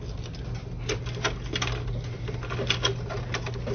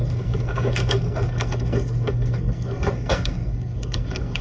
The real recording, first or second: first